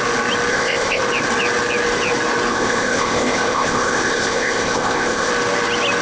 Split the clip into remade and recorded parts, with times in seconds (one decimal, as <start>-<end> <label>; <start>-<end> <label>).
0.0-0.5 recorded; 0.5-1.0 remade; 1.0-2.5 recorded; 2.5-5.3 remade; 5.3-6.0 recorded